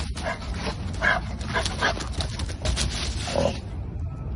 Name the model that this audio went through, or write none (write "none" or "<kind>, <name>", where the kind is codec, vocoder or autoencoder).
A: none